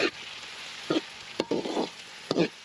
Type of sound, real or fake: fake